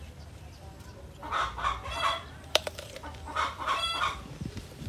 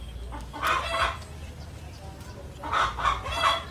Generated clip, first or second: first